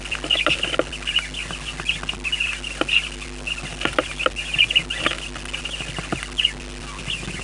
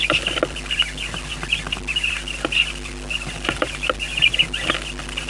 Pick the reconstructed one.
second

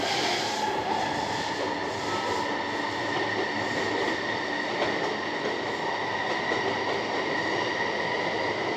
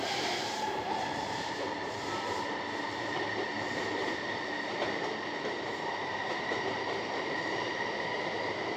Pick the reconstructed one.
second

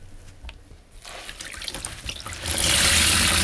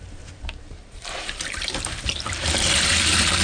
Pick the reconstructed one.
second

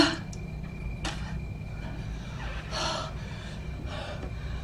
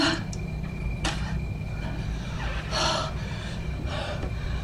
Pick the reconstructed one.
second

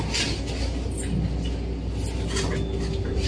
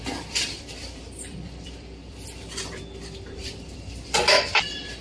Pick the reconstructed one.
second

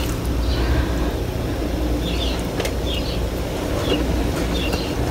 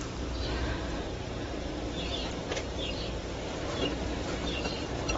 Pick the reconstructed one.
second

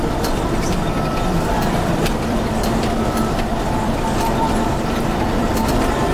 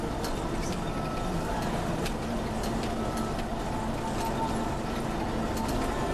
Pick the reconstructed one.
first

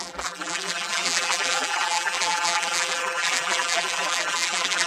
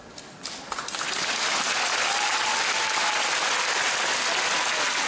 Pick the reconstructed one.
first